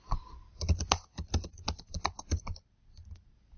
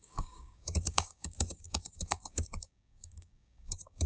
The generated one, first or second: second